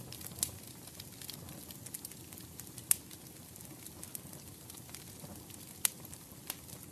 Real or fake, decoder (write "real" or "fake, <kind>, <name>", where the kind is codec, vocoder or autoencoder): real